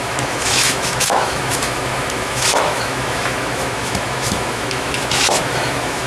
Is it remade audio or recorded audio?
remade